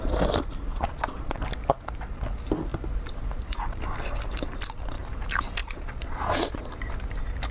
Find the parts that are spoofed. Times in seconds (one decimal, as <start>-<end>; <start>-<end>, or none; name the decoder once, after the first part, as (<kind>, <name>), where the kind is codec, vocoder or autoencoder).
0.7-1.4 (vocoder, Vocos); 5.6-6.6